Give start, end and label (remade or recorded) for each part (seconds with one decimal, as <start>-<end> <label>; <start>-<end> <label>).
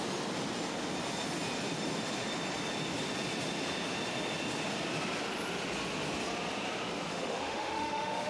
0.0-7.1 recorded; 7.1-8.3 remade